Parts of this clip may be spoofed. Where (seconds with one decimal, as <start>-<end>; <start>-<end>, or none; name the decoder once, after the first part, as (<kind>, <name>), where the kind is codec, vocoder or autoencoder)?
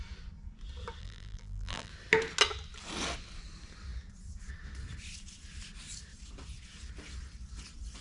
1.0-1.9 (vocoder, BigVGAN v2)